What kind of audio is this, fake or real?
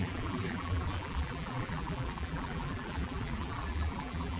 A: fake